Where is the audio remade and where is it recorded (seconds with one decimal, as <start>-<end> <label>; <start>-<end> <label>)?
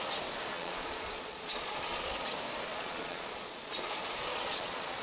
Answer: 0.0-0.5 recorded; 0.5-2.1 remade; 2.1-2.7 recorded; 2.7-3.8 remade; 3.8-4.3 recorded; 4.3-5.0 remade